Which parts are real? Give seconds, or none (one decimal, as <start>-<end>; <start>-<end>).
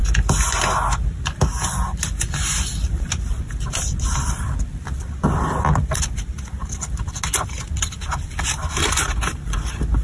0.0-10.0